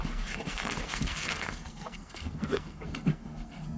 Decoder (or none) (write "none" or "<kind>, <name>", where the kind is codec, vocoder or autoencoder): codec, SNAC